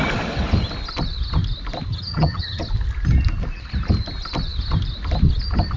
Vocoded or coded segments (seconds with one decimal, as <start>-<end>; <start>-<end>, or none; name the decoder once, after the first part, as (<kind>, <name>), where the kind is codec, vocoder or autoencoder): 1.9-2.6 (vocoder, HiFi-GAN)

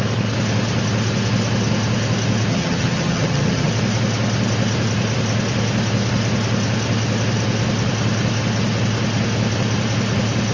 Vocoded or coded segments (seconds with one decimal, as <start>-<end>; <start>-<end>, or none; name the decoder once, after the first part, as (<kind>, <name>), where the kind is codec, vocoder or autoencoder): 2.5-3.7 (vocoder, HiFi-GAN)

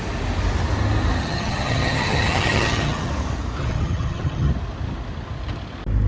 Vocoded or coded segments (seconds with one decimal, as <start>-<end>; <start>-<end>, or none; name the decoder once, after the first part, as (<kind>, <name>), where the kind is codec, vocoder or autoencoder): 1.2-3.1 (vocoder, HiFi-GAN); 3.6-4.5

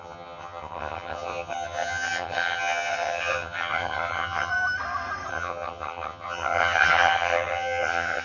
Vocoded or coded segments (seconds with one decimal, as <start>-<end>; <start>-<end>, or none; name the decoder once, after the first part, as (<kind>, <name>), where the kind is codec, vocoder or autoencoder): 0.0-4.5 (vocoder, HiFi-GAN); 5.3-8.2

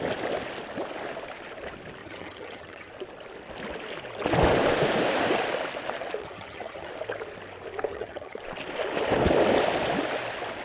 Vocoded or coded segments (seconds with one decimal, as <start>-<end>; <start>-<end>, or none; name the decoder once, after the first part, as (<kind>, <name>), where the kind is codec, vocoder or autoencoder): 2.0-2.9 (vocoder, HiFi-GAN); 6.2-6.9; 7.9-8.4

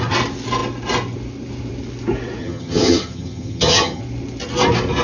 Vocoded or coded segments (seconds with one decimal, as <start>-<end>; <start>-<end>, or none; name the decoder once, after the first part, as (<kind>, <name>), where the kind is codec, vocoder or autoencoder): 2.4-4.0 (vocoder, HiFi-GAN)